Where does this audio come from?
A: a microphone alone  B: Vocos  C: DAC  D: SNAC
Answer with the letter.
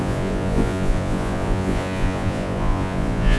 B